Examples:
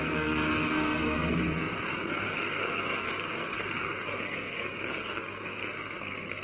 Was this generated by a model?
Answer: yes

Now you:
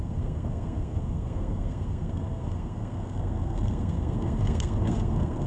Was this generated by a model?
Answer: yes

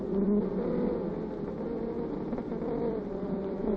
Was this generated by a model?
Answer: no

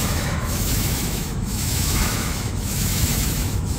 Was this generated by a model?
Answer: yes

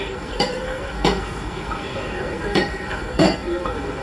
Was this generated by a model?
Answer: yes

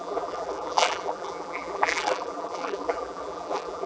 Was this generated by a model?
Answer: yes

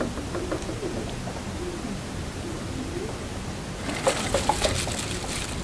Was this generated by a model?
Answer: no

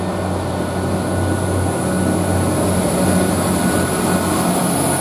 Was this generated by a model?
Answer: no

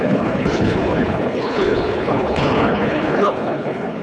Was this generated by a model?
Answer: yes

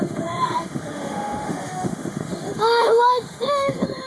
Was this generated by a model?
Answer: yes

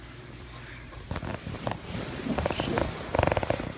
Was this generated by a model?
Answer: no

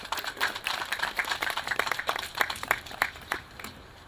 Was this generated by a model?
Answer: yes